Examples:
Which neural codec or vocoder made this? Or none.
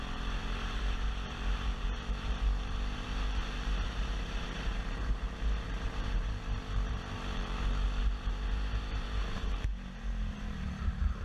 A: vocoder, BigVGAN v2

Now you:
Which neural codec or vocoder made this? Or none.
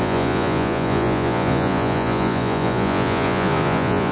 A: vocoder, Vocos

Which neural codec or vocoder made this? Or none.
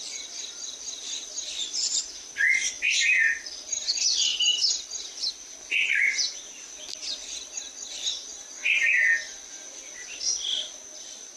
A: none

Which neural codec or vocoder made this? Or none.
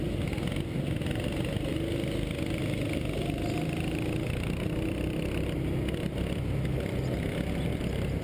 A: none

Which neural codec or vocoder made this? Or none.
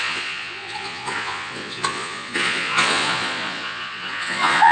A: vocoder, Vocos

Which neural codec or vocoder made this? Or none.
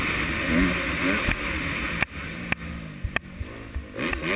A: none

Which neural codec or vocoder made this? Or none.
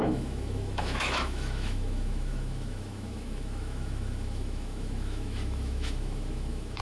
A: autoencoder, DAC-VAE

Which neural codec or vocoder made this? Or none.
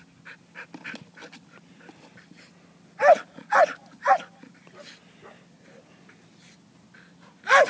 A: none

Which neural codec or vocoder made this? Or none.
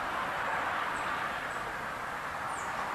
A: vocoder, BigVGAN v2